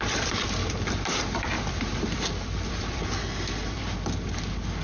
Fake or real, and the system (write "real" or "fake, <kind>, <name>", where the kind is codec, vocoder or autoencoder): fake, vocoder, BigVGAN v2